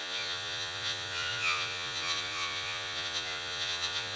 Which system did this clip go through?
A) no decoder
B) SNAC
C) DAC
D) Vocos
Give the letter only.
D